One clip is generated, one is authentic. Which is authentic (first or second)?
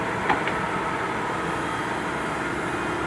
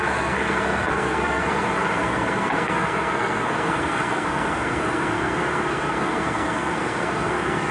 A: first